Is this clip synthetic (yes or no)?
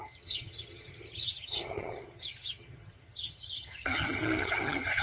yes